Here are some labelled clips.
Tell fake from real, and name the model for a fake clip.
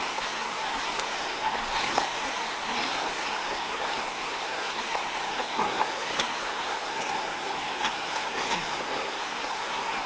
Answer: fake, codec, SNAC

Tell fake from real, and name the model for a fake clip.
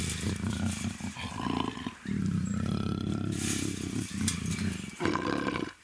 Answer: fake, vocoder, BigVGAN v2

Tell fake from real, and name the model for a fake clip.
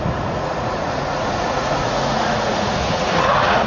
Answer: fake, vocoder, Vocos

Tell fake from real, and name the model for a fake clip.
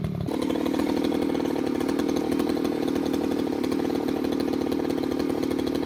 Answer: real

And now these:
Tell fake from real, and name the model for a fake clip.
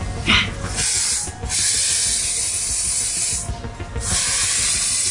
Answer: real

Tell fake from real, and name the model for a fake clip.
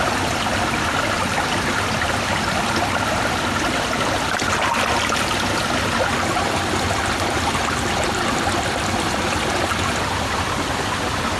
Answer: real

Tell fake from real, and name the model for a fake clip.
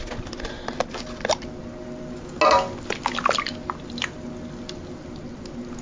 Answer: real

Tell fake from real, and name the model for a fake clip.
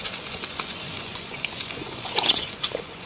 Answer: fake, vocoder, Vocos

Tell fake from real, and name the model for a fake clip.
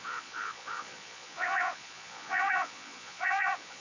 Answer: fake, vocoder, Vocos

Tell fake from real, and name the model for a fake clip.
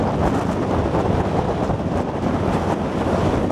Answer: real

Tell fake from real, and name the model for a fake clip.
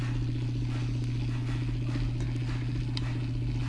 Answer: real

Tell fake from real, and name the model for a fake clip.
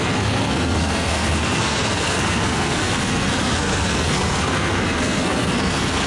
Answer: fake, codec, SNAC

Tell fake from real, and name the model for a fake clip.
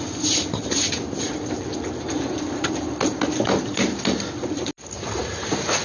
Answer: real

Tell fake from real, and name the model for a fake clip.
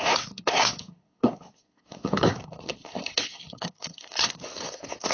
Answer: fake, codec, SNAC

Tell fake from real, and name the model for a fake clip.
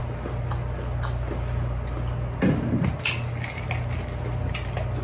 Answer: real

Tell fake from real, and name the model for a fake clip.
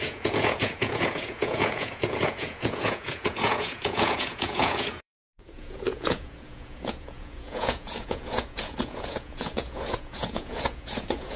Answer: fake, vocoder, Vocos